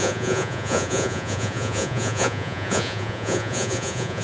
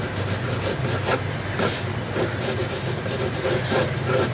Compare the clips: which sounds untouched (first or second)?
second